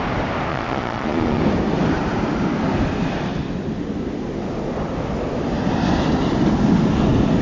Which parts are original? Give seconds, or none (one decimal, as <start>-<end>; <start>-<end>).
0.0-0.5; 1.4-7.4